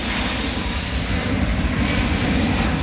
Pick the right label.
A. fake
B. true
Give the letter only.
B